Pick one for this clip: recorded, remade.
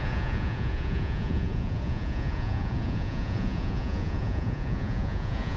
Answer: remade